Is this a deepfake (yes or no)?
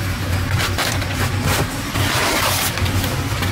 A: no